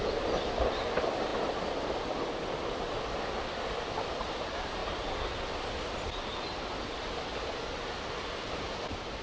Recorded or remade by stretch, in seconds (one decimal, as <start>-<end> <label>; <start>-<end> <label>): 0.0-4.8 remade; 4.8-8.1 recorded; 8.1-9.2 remade